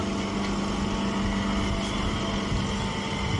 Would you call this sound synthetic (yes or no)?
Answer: no